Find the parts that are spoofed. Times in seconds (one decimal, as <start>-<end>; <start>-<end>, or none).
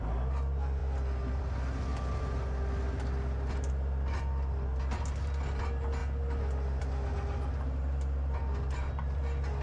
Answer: none